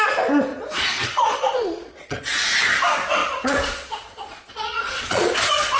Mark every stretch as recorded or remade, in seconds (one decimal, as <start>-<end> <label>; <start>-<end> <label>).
0.0-0.5 recorded; 0.5-2.3 remade; 2.3-3.2 recorded; 3.2-5.8 remade